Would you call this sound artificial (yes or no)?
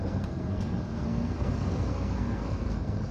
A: yes